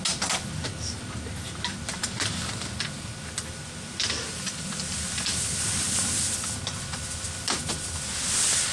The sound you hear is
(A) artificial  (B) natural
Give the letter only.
B